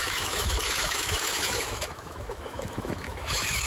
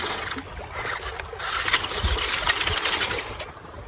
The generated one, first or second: first